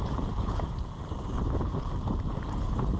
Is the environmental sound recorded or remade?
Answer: recorded